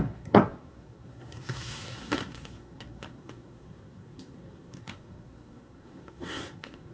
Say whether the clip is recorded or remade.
remade